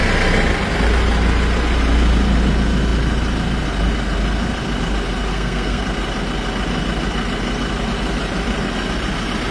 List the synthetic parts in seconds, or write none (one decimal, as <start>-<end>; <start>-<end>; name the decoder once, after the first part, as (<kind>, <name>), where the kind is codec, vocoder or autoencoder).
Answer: 5.3-5.8 (codec, SNAC)